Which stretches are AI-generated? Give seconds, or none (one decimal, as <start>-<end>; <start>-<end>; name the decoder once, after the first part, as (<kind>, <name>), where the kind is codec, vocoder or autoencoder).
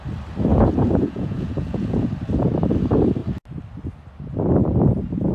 0.5-2.1 (vocoder, Vocos)